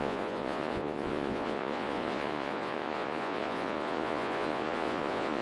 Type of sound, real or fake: fake